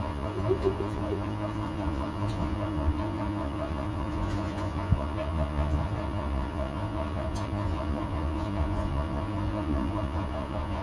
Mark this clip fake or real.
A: fake